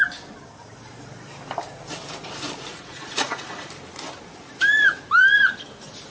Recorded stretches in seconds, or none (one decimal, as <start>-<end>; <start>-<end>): 0.0-2.7; 3.7-6.1